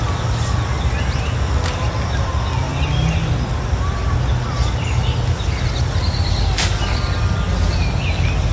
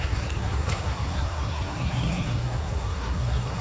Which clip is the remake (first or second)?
second